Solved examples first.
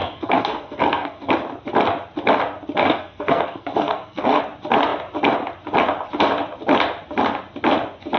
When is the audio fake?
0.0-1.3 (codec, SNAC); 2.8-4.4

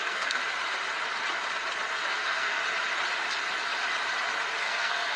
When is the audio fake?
0.0-0.4 (codec, SNAC); 2.1-2.6; 4.6-5.2

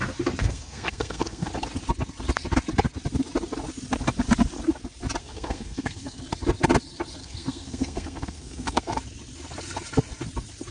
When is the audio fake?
0.4-1.5 (codec, SNAC); 5.2-6.2; 7.2-9.0

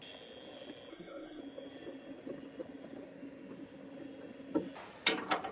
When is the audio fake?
0.9-1.4 (codec, SNAC)

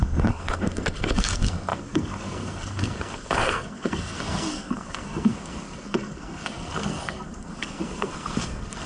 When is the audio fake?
0.0-8.9 (codec, SNAC)

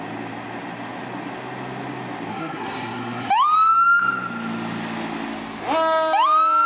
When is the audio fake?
2.3-3.3 (codec, SNAC)

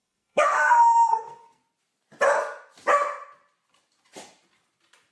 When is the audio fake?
0.0-1.6 (codec, SNAC)

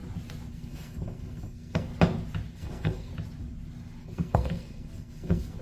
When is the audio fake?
0.5-1.9 (codec, SNAC); 2.5-3.1; 4.0-5.6